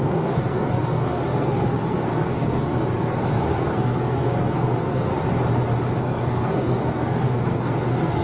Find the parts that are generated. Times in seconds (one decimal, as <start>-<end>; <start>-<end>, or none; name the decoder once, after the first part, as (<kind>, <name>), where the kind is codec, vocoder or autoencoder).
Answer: 0.0-5.1 (codec, SNAC); 6.0-8.2